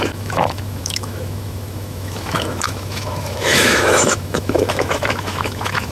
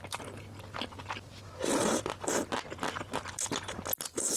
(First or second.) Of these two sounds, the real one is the second